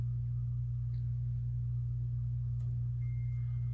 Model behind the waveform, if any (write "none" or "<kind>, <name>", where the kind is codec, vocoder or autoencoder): none